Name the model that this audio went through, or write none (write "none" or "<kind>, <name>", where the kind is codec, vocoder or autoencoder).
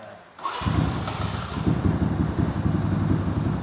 none